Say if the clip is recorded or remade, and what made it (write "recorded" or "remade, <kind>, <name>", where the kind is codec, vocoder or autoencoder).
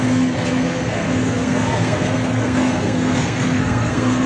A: remade, codec, SNAC